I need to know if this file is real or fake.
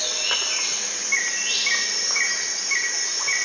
real